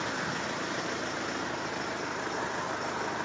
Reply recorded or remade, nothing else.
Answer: recorded